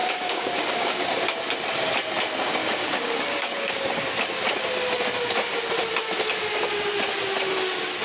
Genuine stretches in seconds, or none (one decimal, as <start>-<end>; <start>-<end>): 1.2-2.6; 4.0-8.0